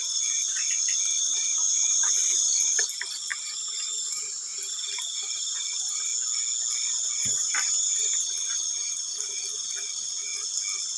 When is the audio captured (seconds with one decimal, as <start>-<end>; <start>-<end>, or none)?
6.1-7.2; 10.3-11.0